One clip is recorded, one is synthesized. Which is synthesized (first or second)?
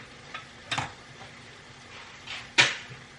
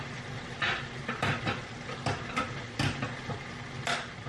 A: first